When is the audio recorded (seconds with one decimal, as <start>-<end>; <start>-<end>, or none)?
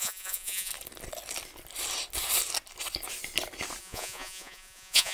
0.7-3.8